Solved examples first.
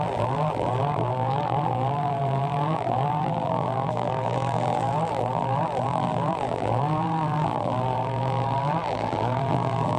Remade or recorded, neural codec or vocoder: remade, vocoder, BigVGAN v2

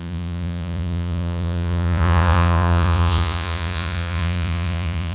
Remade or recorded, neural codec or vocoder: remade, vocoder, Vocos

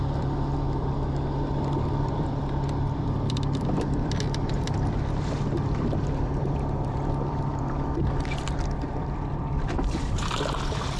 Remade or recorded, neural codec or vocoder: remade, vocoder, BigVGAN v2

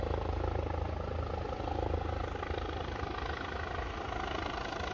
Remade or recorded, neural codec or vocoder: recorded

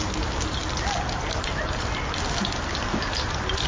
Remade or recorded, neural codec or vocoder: recorded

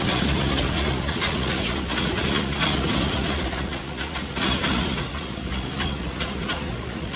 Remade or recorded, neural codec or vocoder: remade, vocoder, Vocos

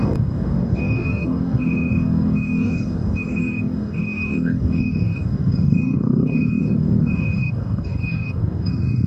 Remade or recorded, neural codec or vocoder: remade, codec, DAC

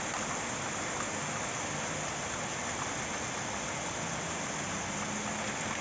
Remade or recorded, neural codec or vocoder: recorded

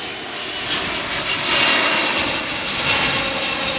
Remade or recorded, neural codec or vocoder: recorded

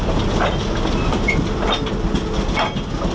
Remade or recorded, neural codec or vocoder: recorded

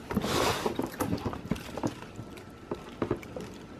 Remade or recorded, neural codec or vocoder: remade, vocoder, BigVGAN v2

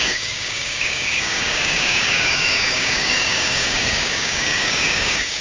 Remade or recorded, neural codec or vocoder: remade, codec, DAC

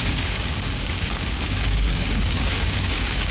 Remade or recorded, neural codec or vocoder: remade, codec, DAC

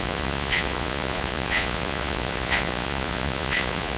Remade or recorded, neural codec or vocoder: remade, vocoder, Vocos